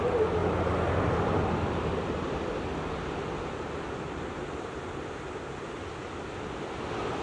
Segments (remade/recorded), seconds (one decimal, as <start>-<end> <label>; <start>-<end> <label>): 0.0-0.4 recorded; 0.4-1.0 remade; 1.0-7.2 recorded